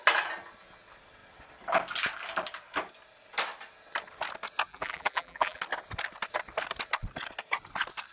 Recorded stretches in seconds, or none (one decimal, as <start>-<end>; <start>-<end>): 0.0-4.7; 5.6-8.1